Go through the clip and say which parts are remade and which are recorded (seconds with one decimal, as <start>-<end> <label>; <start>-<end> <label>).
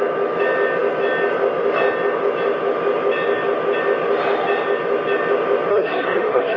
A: 0.0-5.7 recorded; 5.7-6.6 remade